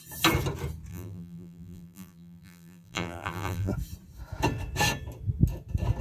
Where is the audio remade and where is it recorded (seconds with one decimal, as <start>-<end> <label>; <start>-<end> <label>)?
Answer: 0.0-0.9 recorded; 0.9-3.7 remade; 3.7-6.0 recorded